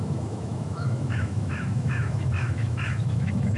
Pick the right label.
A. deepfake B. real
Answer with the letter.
A